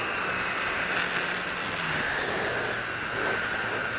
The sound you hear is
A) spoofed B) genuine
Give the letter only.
B